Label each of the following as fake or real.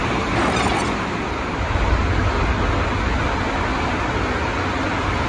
real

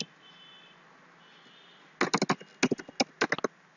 real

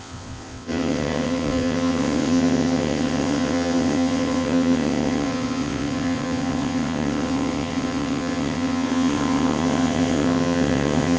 fake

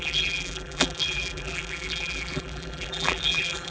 fake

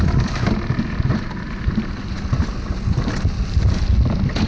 real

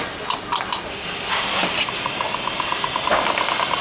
real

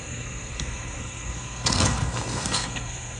fake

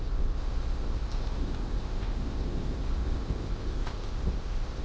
fake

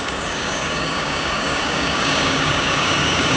fake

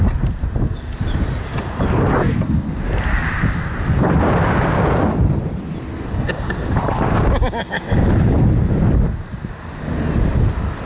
real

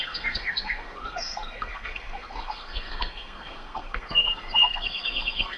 fake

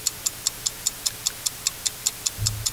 real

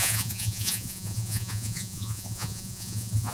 fake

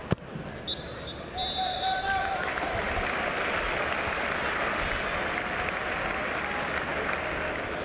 real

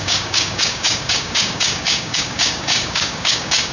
fake